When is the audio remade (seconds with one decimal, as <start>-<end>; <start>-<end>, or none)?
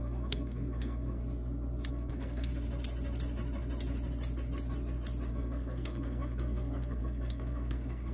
0.0-1.2; 1.9-2.5; 5.3-8.1